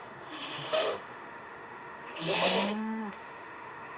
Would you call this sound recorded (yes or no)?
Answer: no